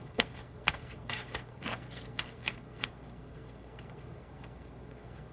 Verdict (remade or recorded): remade